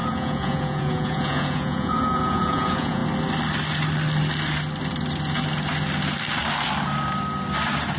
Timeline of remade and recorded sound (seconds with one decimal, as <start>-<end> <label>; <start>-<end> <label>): 0.0-3.0 remade; 3.0-8.0 recorded